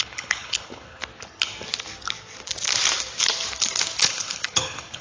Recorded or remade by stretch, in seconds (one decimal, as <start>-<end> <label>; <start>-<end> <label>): 0.0-1.0 remade; 1.0-4.0 recorded; 4.0-5.0 remade